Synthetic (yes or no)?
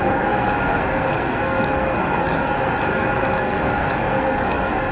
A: yes